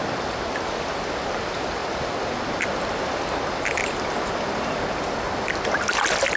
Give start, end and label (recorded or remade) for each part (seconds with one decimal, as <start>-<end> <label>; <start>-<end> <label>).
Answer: 0.0-6.4 recorded